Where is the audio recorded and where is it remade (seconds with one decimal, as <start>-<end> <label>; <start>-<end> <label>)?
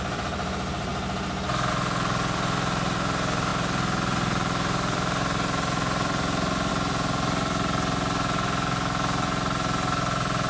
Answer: 0.0-0.9 remade; 0.9-1.7 recorded; 1.7-10.5 remade